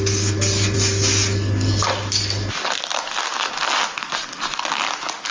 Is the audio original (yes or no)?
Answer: yes